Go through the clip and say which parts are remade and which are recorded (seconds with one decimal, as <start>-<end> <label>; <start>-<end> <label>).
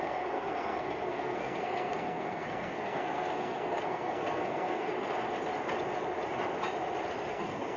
0.0-4.9 remade; 4.9-7.3 recorded; 7.3-7.8 remade